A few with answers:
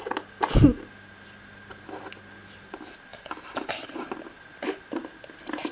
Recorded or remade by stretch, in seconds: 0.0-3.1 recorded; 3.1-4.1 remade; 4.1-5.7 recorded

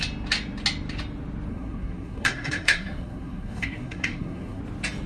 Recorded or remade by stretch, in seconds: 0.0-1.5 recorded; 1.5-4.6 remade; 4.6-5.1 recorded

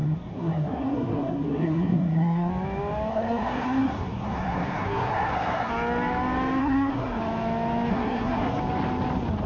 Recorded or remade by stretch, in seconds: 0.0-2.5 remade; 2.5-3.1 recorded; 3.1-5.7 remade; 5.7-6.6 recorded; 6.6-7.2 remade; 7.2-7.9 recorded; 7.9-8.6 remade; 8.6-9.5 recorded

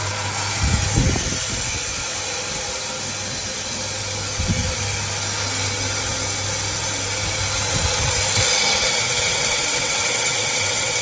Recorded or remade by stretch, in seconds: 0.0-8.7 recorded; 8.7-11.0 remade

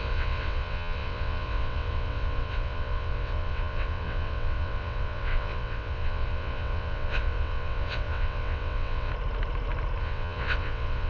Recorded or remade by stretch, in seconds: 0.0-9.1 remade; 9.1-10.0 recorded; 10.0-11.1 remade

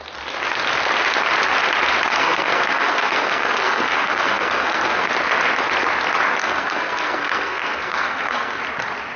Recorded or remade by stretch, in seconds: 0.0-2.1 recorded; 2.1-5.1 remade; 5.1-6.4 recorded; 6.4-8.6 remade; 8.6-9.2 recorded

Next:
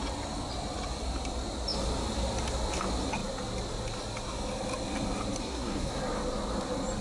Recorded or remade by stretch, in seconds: 0.0-5.4 recorded; 5.4-6.0 remade; 6.0-7.0 recorded

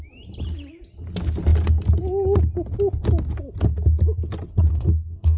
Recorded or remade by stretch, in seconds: 0.0-4.7 recorded; 4.7-5.4 remade